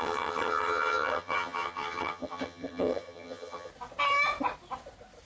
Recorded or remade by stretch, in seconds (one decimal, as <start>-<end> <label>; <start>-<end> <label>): 0.0-3.7 remade; 3.7-5.3 recorded